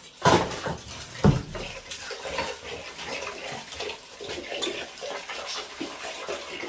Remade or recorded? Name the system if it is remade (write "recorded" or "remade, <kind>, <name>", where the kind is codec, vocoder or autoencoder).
recorded